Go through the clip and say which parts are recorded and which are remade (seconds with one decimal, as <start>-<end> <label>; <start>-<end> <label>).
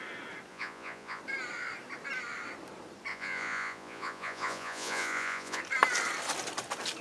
0.0-0.5 recorded; 0.5-1.2 remade; 1.2-3.1 recorded; 3.1-5.6 remade; 5.6-7.0 recorded